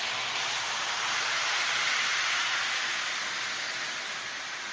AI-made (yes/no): no